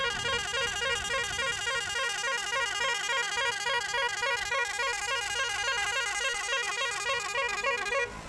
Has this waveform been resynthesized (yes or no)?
no